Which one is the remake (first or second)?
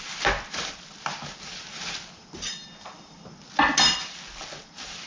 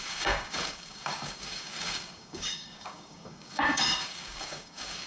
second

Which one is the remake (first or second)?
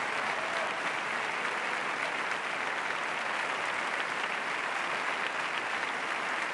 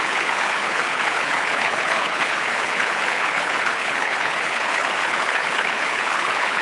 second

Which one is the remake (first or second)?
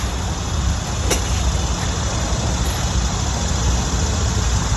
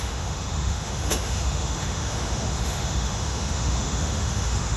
second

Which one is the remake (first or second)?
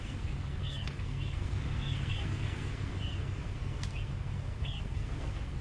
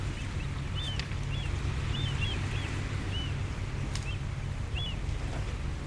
first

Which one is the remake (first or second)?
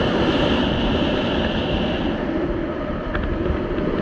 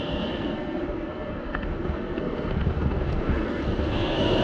second